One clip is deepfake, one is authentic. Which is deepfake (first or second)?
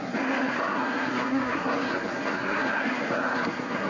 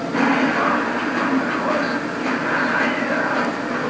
first